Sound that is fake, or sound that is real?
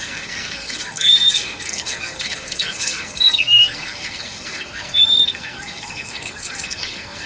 fake